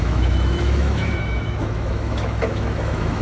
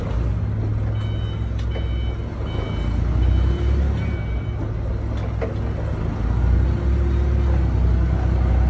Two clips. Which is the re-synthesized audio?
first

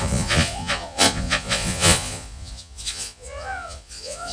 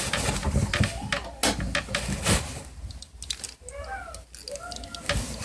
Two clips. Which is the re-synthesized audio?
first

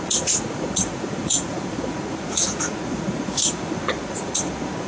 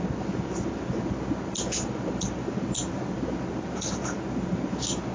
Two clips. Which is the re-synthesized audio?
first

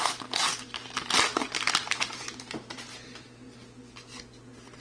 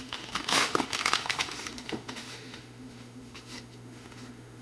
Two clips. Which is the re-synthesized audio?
second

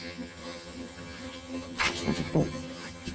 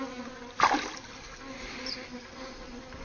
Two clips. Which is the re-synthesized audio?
first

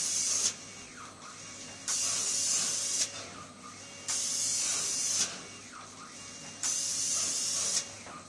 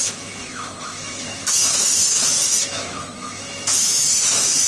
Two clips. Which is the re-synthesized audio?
second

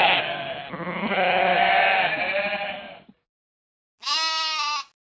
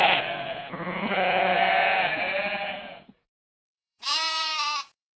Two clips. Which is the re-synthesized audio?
second